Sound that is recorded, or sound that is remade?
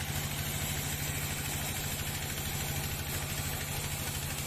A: recorded